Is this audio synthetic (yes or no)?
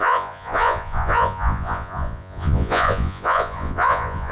yes